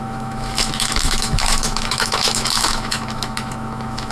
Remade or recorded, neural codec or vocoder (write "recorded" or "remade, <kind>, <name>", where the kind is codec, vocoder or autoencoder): remade, autoencoder, DAC-VAE